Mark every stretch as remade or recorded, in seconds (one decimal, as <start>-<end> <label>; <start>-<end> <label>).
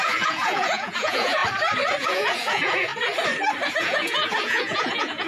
0.0-1.4 remade; 1.4-2.0 recorded; 2.0-2.9 remade; 2.9-3.7 recorded; 3.7-5.3 remade